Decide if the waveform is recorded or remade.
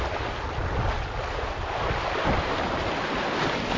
recorded